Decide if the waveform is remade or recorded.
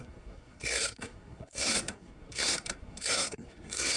remade